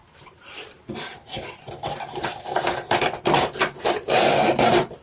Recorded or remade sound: remade